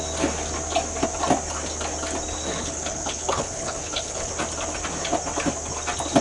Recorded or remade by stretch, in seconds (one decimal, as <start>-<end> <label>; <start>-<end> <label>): 0.0-2.5 recorded; 2.5-4.3 remade; 4.3-6.2 recorded